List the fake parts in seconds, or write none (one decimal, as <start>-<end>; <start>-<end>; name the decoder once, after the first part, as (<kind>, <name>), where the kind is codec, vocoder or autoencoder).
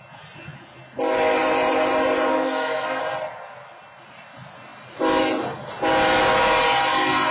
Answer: 2.3-3.0 (codec, SNAC)